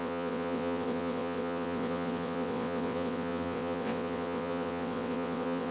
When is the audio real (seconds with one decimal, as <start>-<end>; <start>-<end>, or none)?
none